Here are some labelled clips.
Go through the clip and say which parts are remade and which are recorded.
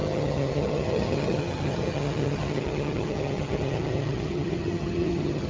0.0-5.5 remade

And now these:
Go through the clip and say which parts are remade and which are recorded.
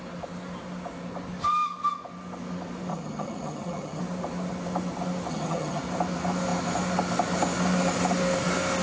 0.0-2.9 recorded; 2.9-4.0 remade; 4.0-5.3 recorded; 5.3-5.8 remade; 5.8-8.8 recorded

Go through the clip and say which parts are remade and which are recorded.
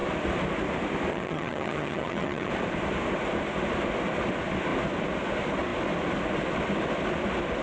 0.0-1.1 recorded; 1.1-2.5 remade; 2.5-7.6 recorded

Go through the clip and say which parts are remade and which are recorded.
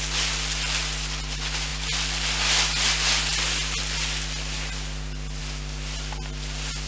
0.0-6.9 recorded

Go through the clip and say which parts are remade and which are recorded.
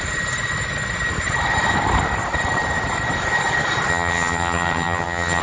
0.0-3.9 recorded; 3.9-5.4 remade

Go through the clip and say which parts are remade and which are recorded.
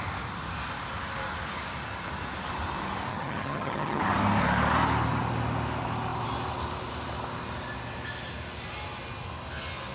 0.0-3.1 recorded; 3.1-4.0 remade; 4.0-9.9 recorded